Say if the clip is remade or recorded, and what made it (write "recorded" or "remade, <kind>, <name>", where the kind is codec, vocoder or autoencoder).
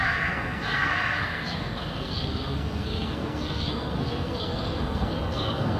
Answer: remade, codec, SNAC